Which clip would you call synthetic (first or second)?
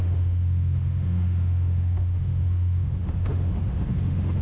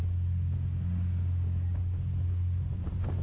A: first